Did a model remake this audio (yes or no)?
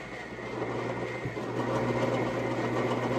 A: no